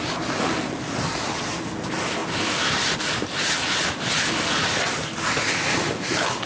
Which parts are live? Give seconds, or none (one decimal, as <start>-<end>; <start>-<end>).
0.0-6.5